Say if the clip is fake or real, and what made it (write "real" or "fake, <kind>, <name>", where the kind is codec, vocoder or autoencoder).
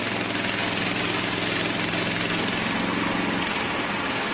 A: real